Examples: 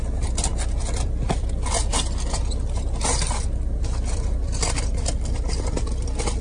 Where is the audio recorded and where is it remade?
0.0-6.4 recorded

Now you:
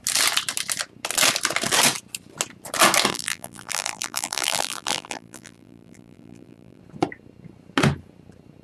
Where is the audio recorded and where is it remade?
0.0-3.1 recorded; 3.1-6.8 remade; 6.8-8.6 recorded

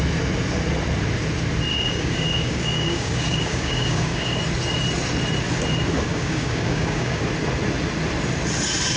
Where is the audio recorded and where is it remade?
0.0-1.7 recorded; 1.7-4.4 remade; 4.4-6.1 recorded; 6.1-7.2 remade; 7.2-9.0 recorded

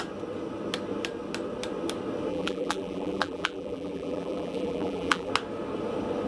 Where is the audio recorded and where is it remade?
0.0-2.3 recorded; 2.3-5.3 remade; 5.3-6.3 recorded

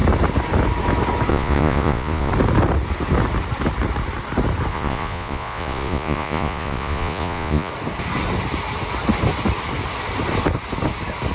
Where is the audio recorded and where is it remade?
0.0-1.3 recorded; 1.3-2.3 remade; 2.3-4.7 recorded; 4.7-7.7 remade; 7.7-11.3 recorded

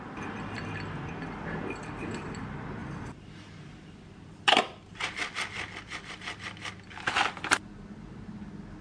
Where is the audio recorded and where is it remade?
0.0-2.8 recorded; 2.8-6.7 remade; 6.7-8.8 recorded

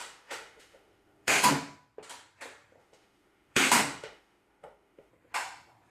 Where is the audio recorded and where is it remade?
0.0-1.5 remade; 1.5-2.8 recorded; 2.8-5.1 remade; 5.1-5.9 recorded